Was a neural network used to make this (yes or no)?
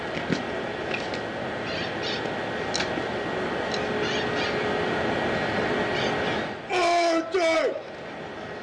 no